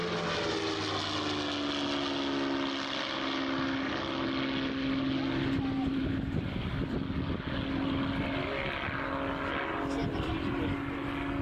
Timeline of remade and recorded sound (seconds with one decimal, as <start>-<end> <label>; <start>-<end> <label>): 0.0-5.8 recorded; 5.8-6.9 remade; 6.9-10.0 recorded; 10.0-10.5 remade; 10.5-11.4 recorded